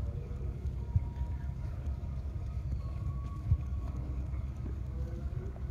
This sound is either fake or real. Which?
fake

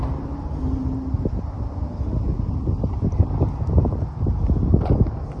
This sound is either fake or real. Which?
real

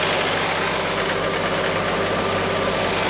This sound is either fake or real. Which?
real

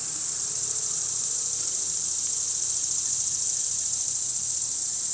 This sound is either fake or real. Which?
fake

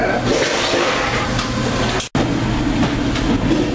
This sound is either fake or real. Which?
real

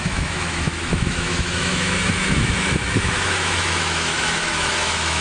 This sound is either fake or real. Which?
fake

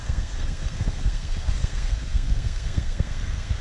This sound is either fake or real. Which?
fake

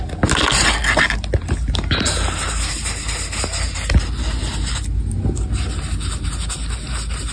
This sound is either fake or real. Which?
real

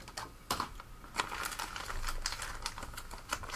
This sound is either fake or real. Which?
real